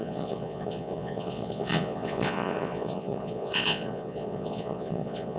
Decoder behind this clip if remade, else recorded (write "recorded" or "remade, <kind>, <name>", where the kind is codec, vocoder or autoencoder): remade, vocoder, Vocos